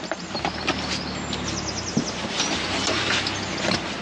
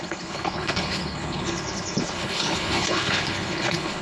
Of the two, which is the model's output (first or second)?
second